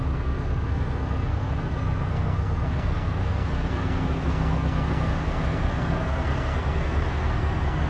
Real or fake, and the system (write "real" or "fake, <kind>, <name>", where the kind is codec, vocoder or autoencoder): fake, codec, SNAC